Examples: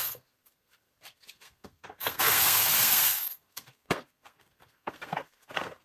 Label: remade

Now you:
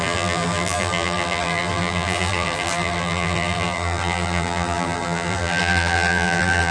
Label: remade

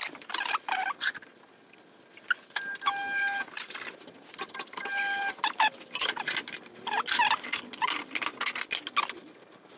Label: recorded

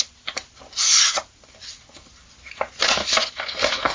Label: recorded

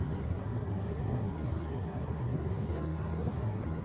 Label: remade